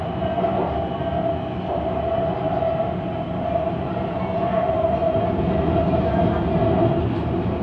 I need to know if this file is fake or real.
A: real